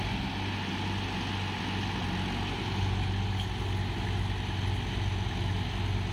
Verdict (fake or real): real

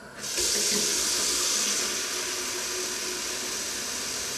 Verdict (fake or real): real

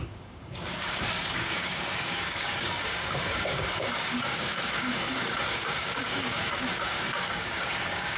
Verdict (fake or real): fake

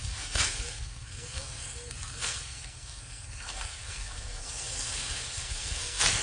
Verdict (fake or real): fake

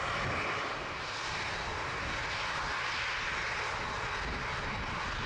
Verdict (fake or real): real